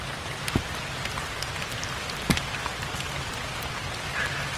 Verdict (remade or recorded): recorded